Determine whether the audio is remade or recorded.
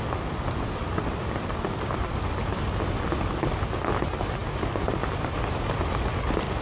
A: recorded